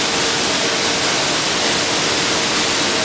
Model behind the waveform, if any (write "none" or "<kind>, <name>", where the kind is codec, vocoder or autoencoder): none